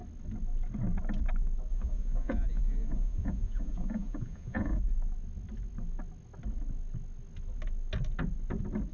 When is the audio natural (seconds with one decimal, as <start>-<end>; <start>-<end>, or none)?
0.0-1.7; 4.8-8.9